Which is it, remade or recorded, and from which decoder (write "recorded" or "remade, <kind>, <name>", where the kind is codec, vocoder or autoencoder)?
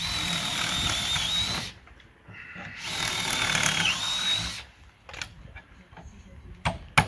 recorded